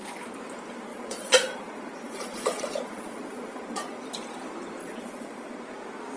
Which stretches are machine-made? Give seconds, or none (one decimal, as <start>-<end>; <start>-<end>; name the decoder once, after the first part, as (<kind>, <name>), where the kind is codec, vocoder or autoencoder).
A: 0.9-4.0 (vocoder, Vocos); 4.8-5.6